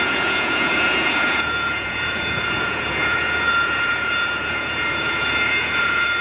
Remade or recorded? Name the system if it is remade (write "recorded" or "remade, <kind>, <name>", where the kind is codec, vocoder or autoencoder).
remade, vocoder, Vocos